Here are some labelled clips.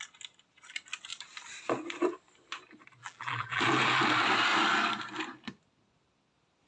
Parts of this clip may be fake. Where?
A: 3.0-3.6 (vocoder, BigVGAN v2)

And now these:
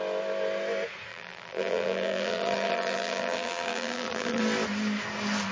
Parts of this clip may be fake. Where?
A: 1.1-4.4 (vocoder, BigVGAN v2)

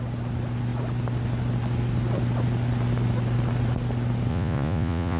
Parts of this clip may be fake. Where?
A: 4.3-5.2 (vocoder, Vocos)

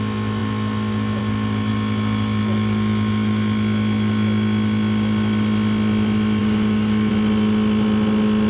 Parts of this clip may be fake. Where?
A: 6.4-7.1 (codec, DAC)

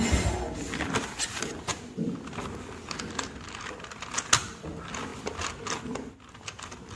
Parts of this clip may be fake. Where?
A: none

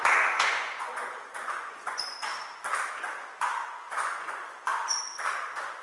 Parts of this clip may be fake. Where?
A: 0.0-2.3 (vocoder, Vocos); 3.0-4.7; 5.3-5.8